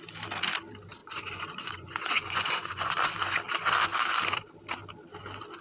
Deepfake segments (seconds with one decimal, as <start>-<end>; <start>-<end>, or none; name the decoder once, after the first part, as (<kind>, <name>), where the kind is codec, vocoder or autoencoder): 1.0-3.1 (vocoder, Vocos)